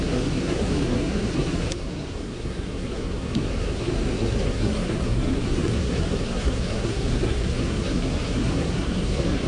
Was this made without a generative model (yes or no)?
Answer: no